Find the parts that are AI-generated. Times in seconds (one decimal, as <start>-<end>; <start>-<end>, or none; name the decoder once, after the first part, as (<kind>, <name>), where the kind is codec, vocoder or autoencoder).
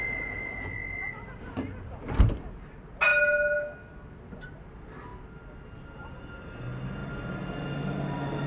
none